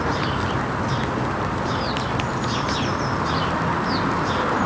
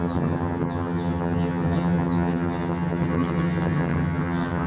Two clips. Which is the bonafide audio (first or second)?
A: first